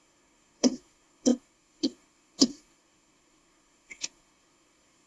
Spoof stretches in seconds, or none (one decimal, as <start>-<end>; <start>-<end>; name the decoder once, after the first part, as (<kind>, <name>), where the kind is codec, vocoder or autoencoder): 0.0-5.1 (codec, SNAC)